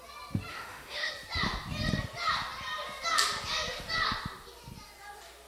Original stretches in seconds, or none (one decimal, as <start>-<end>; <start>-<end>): 0.0-0.5; 1.1-5.5